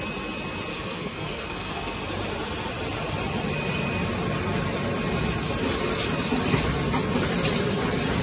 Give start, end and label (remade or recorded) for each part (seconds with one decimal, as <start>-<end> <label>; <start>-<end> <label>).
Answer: 0.0-0.7 recorded; 0.7-2.0 remade; 2.0-8.2 recorded